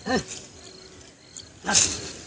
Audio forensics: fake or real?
real